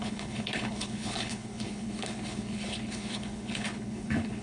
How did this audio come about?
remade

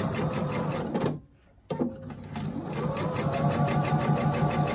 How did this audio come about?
recorded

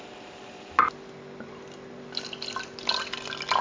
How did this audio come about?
recorded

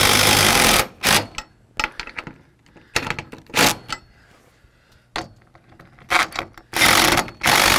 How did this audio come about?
recorded